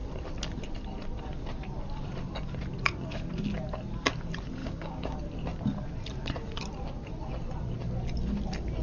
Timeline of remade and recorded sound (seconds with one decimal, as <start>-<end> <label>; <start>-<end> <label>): 0.0-4.6 recorded; 4.6-5.2 remade; 5.2-8.8 recorded

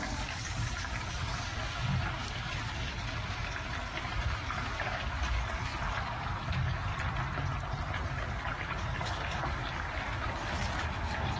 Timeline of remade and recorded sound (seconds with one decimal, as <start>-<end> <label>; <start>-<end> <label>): 0.0-6.9 remade; 6.9-8.1 recorded; 8.1-11.4 remade

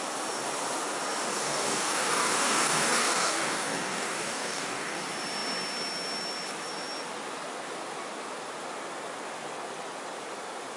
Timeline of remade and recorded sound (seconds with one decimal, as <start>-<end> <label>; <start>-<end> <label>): 0.0-1.3 recorded; 1.3-5.0 remade; 5.0-10.8 recorded

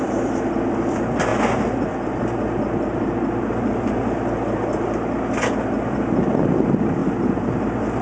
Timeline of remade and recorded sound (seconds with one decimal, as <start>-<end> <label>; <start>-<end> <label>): 0.0-8.0 recorded

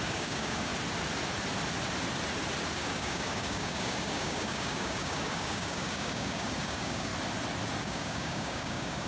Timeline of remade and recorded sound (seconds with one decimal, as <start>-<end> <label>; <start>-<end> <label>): 0.0-0.7 remade; 0.7-2.7 recorded; 2.7-7.1 remade; 7.1-7.8 recorded; 7.8-9.1 remade

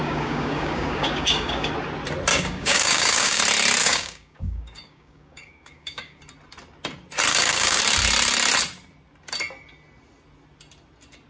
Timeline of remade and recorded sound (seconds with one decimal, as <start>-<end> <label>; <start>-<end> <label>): 0.0-1.7 remade; 1.7-2.3 recorded; 2.3-3.4 remade; 3.4-3.8 recorded; 3.8-6.2 remade; 6.2-7.3 recorded; 7.3-7.8 remade; 7.8-11.3 recorded

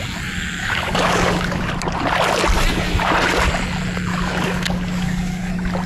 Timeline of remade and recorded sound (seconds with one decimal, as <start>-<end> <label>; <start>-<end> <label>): 0.0-0.6 recorded; 0.6-1.6 remade; 1.6-4.1 recorded; 4.1-5.5 remade; 5.5-5.9 recorded

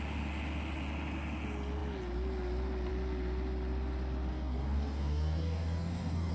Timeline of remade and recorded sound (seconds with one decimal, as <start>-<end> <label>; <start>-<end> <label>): 0.0-4.3 recorded; 4.3-6.3 remade